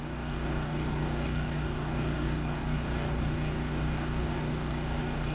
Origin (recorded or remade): remade